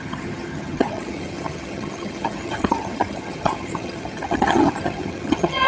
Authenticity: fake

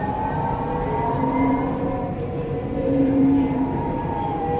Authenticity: fake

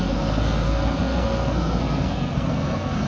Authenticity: fake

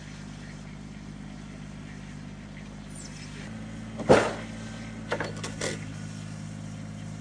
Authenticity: real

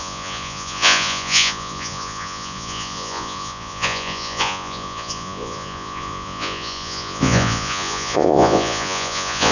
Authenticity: fake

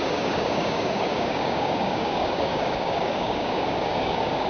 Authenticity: fake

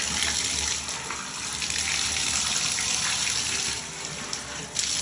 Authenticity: real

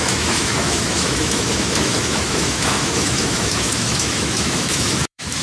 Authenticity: fake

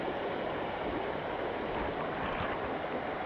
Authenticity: real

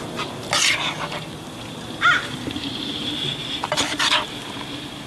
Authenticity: real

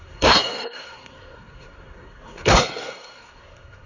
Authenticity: fake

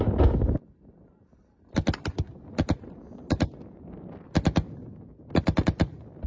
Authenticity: real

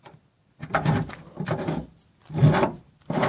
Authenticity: real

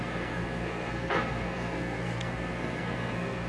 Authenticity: fake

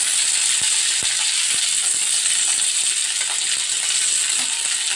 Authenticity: real